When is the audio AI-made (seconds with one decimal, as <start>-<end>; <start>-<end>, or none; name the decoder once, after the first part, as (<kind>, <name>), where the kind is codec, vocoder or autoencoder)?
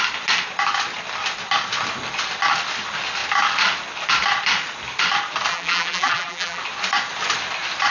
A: 5.5-6.6 (vocoder, BigVGAN v2)